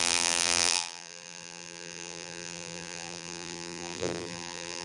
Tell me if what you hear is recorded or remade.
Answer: remade